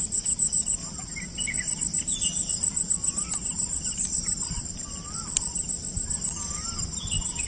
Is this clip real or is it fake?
real